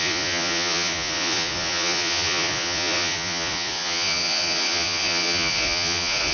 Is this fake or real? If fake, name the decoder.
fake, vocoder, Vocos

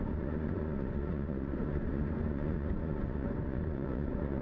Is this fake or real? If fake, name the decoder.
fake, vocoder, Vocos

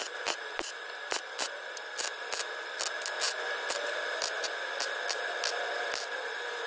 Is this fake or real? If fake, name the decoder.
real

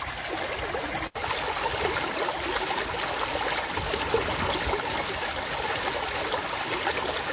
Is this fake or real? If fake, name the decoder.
real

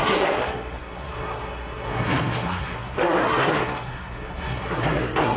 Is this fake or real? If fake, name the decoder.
fake, codec, SNAC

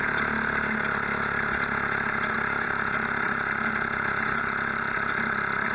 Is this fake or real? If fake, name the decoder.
real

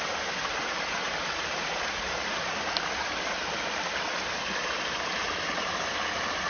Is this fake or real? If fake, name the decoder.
real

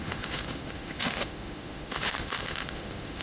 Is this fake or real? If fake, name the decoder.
fake, autoencoder, DAC-VAE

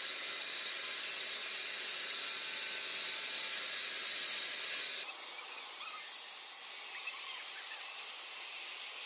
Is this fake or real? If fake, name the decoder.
real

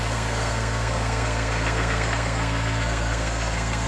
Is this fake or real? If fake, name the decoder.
fake, codec, SNAC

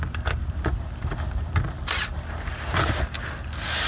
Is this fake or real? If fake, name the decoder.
real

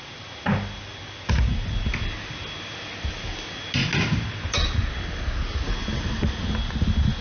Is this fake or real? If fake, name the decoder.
real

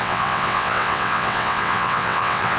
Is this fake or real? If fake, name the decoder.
fake, vocoder, WaveNeXt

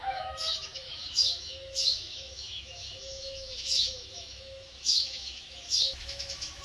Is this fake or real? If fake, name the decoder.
fake, autoencoder, DAC-VAE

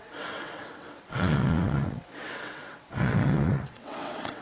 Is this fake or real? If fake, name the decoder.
fake, vocoder, WaveNeXt